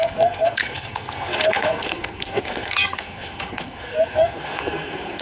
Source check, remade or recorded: remade